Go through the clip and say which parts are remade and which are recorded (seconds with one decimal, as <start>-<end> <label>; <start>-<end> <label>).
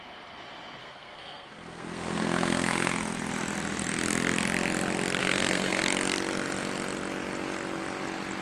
0.0-0.8 recorded; 0.8-2.9 remade; 2.9-5.2 recorded; 5.2-5.8 remade; 5.8-8.4 recorded